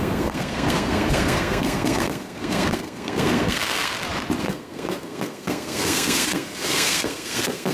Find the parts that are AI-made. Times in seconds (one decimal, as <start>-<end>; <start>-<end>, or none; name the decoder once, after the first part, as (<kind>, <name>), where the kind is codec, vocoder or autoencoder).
0.0-3.9 (codec, SNAC); 4.4-7.7